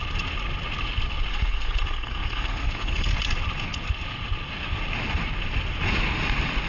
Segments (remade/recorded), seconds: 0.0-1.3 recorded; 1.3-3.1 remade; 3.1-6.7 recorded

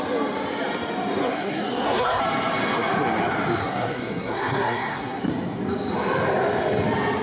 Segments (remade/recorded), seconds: 0.0-1.2 recorded; 1.2-2.2 remade; 2.2-3.6 recorded; 3.6-5.3 remade; 5.3-7.2 recorded

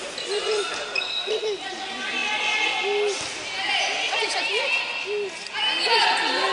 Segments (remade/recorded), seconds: 0.0-6.5 recorded

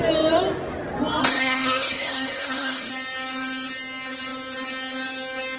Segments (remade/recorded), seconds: 0.0-1.2 recorded; 1.2-2.9 remade; 2.9-5.6 recorded

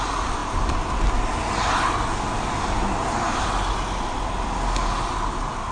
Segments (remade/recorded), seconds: 0.0-5.7 recorded

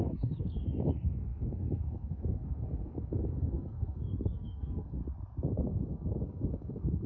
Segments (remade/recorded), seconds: 0.0-5.0 remade; 5.0-5.5 recorded; 5.5-7.1 remade

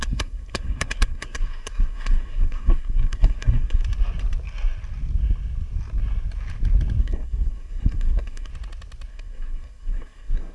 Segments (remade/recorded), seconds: 0.0-3.8 remade; 3.8-7.0 recorded; 7.0-8.5 remade; 8.5-9.1 recorded; 9.1-10.5 remade

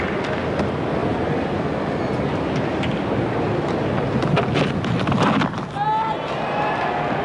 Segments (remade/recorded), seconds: 0.0-7.2 recorded